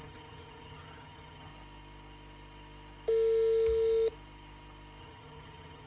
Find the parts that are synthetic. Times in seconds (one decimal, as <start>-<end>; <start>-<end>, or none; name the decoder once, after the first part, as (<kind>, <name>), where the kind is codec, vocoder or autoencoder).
0.0-1.5 (vocoder, HiFi-GAN); 5.0-5.9